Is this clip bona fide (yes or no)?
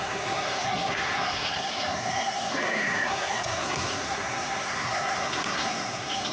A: no